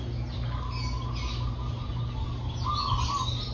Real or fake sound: real